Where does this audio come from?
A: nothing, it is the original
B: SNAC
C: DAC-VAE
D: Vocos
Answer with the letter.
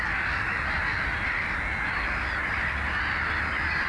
A